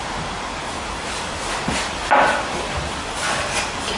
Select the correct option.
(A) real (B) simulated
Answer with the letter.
A